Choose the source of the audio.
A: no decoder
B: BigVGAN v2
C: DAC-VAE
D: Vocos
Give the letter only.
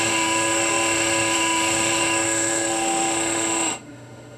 C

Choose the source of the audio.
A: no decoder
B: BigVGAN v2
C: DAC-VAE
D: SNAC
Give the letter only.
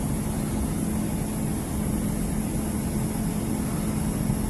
A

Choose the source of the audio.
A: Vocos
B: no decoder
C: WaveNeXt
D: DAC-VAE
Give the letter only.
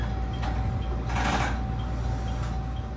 B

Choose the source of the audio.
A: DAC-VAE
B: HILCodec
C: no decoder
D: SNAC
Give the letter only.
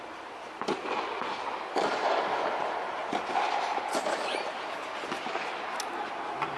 C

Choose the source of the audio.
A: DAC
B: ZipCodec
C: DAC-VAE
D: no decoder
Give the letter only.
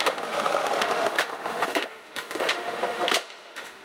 C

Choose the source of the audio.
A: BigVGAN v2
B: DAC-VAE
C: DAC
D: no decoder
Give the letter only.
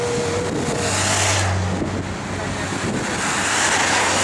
D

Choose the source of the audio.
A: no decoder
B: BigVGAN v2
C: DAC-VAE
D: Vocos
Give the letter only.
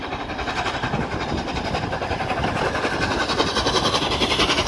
A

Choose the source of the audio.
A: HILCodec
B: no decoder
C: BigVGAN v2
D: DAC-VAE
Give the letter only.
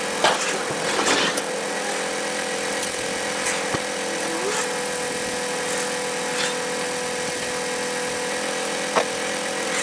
B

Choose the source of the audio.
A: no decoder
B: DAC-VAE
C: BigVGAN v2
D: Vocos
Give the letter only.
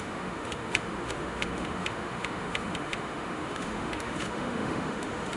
B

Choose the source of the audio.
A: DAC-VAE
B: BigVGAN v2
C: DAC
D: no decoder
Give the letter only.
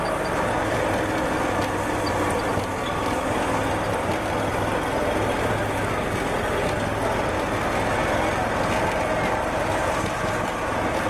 D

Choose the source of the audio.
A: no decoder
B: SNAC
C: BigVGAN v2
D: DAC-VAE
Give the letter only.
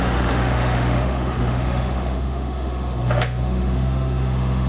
D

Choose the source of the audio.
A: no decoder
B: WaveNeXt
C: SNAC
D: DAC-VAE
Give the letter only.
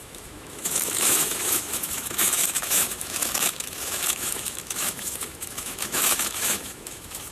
D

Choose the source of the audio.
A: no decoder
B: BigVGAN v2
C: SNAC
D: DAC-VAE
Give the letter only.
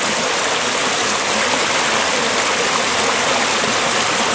A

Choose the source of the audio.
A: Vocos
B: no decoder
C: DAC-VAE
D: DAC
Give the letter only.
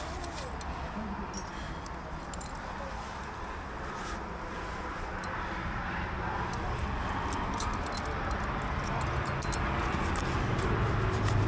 B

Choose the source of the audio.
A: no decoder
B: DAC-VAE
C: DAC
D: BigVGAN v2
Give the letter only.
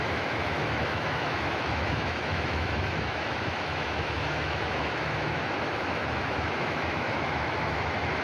B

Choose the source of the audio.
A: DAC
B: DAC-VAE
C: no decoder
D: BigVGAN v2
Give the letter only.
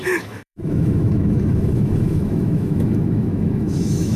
B